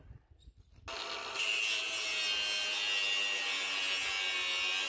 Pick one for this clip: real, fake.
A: real